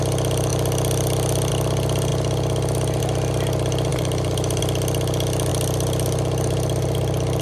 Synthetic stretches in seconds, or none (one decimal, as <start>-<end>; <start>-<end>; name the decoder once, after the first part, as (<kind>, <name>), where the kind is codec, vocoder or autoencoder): 3.9-4.6 (vocoder, BigVGAN v2); 5.5-7.4